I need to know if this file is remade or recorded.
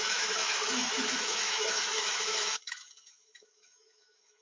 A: remade